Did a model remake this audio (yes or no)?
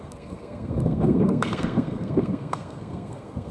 yes